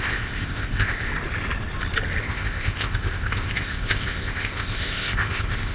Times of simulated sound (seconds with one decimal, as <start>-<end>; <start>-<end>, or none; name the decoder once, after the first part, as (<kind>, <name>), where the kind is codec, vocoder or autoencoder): 0.0-1.1 (codec, ZipCodec); 2.2-5.7